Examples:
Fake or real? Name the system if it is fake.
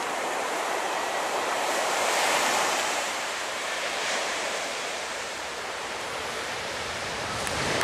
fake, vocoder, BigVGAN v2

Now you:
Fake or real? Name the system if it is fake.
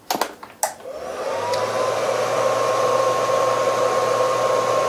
real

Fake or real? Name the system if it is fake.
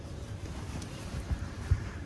fake, vocoder, BigVGAN v2